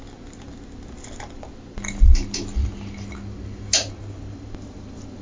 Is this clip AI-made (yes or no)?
no